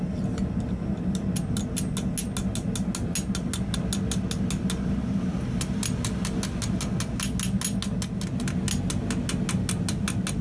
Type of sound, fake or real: real